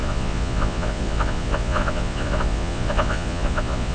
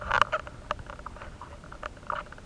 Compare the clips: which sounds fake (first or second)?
first